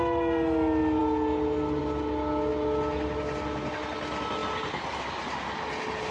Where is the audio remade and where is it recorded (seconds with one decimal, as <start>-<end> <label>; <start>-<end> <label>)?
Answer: 0.0-6.1 recorded